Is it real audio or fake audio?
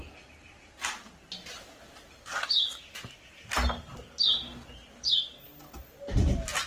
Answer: real